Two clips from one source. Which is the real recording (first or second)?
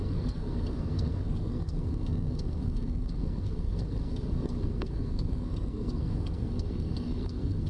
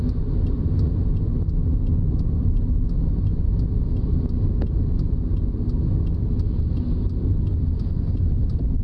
second